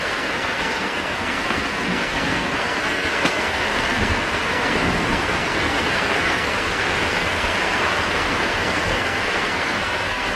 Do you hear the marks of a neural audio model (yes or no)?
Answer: yes